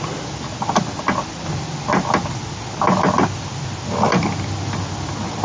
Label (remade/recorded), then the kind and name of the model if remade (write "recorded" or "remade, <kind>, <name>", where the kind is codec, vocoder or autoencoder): recorded